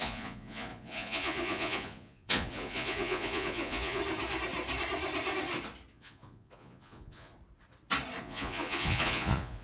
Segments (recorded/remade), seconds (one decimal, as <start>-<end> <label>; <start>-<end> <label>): 0.0-4.0 remade; 4.0-5.9 recorded; 5.9-7.3 remade; 7.3-8.2 recorded; 8.2-9.6 remade